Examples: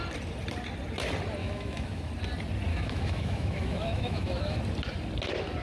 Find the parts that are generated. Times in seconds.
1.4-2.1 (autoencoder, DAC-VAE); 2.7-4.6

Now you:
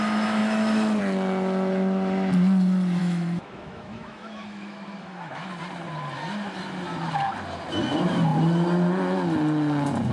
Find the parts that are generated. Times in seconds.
0.4-1.0 (autoencoder, DAC-VAE); 3.0-5.6

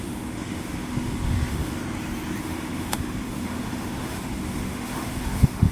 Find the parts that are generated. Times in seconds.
0.0-1.8 (autoencoder, DAC-VAE); 2.4-5.7

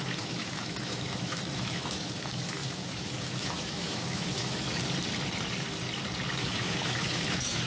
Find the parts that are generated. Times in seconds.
0.0-4.8 (autoencoder, DAC-VAE); 6.4-7.7

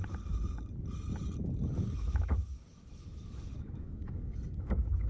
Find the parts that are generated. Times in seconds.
1.6-5.1 (autoencoder, DAC-VAE)

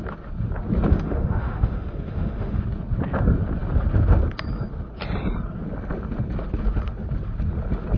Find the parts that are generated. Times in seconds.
0.9-2.6 (autoencoder, DAC-VAE)